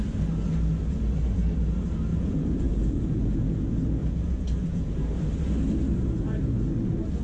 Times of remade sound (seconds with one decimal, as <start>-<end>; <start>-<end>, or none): 2.1-3.6; 4.0-4.9